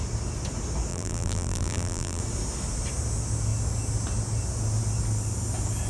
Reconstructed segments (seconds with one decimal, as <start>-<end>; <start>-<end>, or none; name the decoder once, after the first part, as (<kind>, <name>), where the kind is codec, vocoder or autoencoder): 0.9-2.2 (vocoder, BigVGAN v2)